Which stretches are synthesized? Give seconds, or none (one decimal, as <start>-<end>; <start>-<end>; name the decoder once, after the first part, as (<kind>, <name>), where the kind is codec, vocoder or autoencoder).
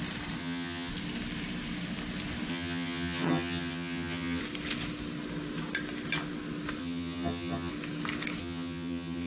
0.4-0.9 (vocoder, HiFi-GAN); 2.5-4.4; 6.8-7.7; 8.4-9.3